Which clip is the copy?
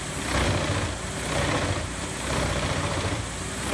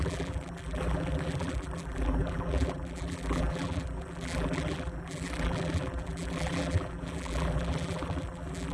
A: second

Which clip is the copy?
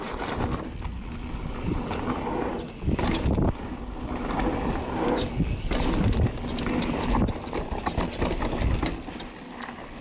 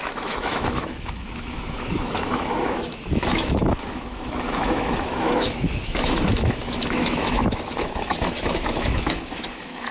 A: second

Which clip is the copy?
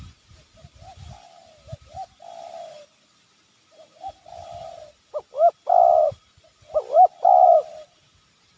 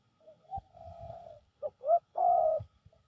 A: second